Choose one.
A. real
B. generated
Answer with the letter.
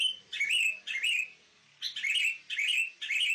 A